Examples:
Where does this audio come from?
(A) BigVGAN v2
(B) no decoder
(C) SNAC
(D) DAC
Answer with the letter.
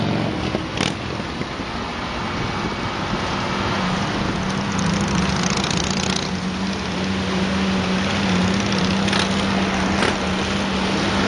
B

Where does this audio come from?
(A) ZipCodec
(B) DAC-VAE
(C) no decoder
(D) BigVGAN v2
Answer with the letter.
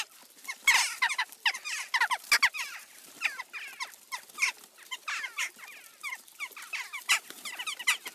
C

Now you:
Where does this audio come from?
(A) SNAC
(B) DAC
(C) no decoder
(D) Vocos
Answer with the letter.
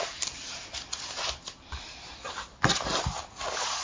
C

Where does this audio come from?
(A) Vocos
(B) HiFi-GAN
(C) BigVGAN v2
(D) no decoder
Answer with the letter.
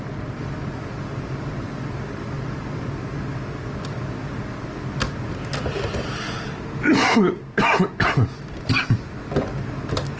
D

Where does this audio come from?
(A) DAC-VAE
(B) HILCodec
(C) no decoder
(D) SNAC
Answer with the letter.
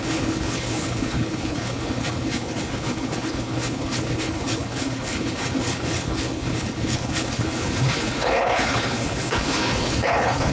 B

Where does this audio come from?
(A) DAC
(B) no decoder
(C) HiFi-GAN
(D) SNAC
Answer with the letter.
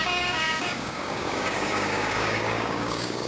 A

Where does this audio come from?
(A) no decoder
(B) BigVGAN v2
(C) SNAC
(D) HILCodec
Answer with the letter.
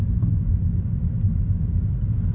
B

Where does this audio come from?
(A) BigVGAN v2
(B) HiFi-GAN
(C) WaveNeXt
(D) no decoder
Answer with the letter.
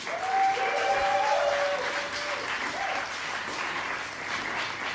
D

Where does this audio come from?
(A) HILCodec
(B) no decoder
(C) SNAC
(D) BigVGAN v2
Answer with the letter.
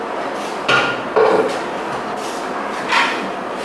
B